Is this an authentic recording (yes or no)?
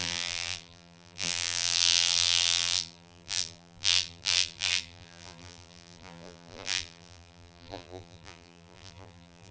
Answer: no